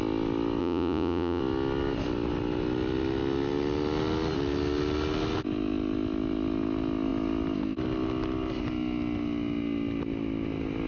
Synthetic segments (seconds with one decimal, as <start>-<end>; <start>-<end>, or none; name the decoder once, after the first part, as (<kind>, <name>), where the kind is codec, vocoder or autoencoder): 0.6-1.4 (vocoder, Vocos)